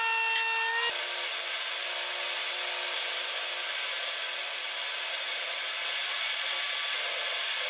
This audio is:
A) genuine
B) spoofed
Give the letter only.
A